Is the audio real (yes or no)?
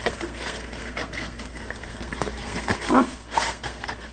no